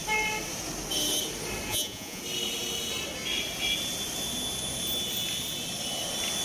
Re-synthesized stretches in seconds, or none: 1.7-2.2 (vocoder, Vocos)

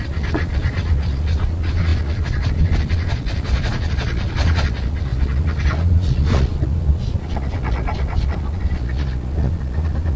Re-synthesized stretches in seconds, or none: 0.0-10.2 (vocoder, Vocos)

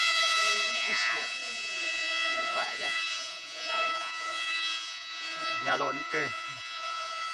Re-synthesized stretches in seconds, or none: 0.0-7.3 (vocoder, Vocos)

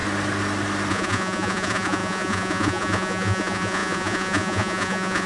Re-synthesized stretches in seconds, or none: 0.9-5.3 (vocoder, Vocos)